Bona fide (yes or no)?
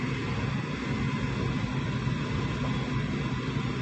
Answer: yes